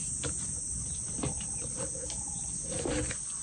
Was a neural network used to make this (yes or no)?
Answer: no